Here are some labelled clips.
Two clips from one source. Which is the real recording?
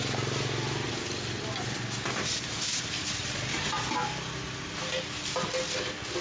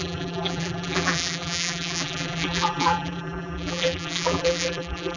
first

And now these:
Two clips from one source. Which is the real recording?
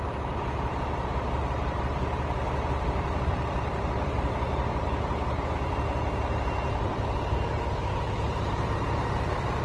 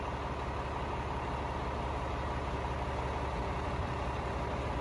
second